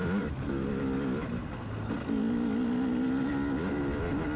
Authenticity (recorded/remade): recorded